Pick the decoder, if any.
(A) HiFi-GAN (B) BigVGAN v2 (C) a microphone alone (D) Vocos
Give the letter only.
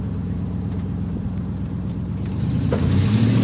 B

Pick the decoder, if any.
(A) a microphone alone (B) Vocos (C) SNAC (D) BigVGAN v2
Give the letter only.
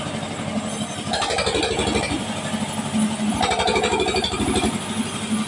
A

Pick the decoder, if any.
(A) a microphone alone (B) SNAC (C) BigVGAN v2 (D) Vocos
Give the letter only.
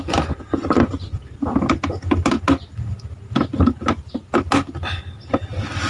A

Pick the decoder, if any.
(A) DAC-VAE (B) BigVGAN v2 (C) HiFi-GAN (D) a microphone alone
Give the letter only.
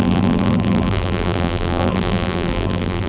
B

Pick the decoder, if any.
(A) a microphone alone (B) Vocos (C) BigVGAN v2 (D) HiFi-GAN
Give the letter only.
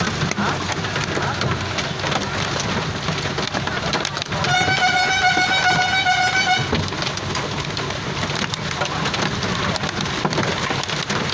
A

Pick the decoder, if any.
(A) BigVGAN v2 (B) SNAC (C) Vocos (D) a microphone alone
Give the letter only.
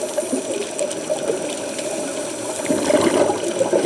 D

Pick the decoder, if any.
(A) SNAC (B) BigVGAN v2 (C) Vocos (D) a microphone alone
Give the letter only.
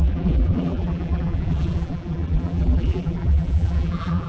B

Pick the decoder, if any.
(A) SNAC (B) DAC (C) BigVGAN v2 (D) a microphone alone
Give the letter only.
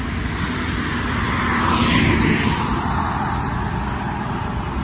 D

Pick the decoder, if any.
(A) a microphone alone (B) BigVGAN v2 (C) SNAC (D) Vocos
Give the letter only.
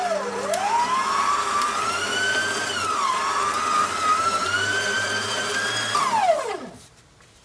B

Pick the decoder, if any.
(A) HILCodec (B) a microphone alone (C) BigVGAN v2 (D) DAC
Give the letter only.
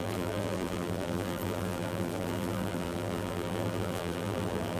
C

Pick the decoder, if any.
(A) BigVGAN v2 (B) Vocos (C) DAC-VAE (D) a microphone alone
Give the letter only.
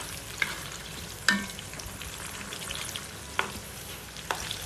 D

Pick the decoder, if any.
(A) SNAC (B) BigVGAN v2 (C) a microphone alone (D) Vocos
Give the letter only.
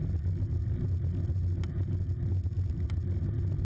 C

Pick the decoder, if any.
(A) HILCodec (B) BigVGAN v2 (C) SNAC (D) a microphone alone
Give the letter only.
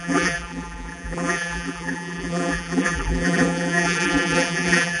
B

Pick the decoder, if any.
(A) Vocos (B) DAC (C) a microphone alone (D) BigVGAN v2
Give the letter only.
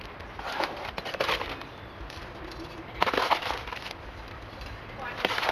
C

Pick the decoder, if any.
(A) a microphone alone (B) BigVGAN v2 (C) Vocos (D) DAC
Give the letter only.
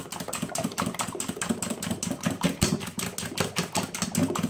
A